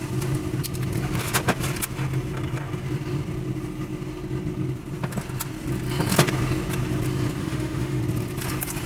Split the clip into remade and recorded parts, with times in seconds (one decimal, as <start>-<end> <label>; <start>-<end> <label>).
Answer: 0.0-7.4 recorded; 7.4-8.0 remade; 8.0-8.9 recorded